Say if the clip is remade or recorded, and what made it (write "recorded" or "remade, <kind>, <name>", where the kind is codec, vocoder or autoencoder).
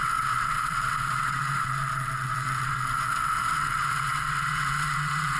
remade, vocoder, WaveNeXt